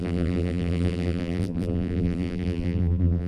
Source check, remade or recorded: remade